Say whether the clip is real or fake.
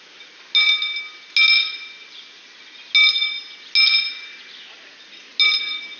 real